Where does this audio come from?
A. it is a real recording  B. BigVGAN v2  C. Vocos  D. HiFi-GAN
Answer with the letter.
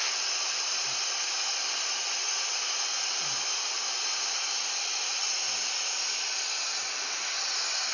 B